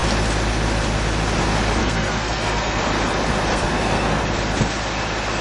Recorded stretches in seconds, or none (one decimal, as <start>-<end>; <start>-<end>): 0.0-1.8; 2.8-3.5; 4.2-5.4